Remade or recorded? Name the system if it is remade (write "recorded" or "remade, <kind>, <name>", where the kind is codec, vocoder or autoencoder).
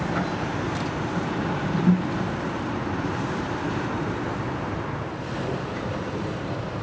remade, vocoder, BigVGAN v2